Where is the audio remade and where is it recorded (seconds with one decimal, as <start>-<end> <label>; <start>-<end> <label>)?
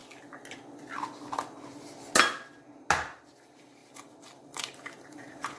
0.0-3.4 recorded; 3.4-5.6 remade